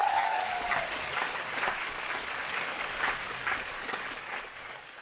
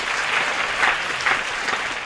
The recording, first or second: second